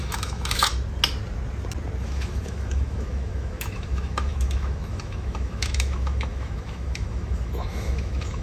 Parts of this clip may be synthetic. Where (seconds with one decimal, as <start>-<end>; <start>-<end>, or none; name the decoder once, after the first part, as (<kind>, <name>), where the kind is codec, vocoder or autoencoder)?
0.0-0.7 (autoencoder, DAC-VAE); 2.0-8.4